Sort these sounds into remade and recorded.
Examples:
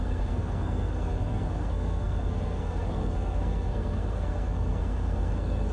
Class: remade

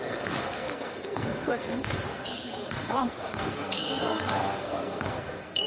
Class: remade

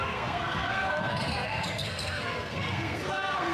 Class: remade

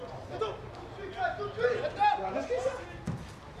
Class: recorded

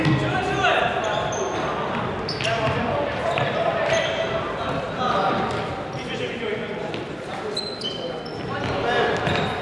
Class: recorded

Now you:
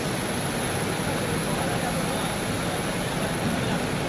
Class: recorded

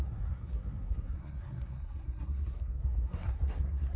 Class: remade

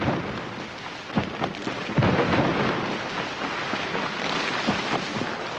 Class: recorded